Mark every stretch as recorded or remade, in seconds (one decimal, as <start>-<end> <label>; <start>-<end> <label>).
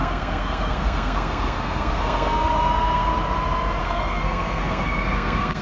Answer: 0.0-3.1 remade; 3.1-3.8 recorded; 3.8-5.6 remade